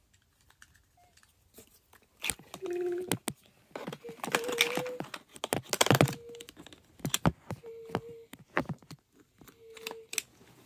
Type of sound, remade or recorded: recorded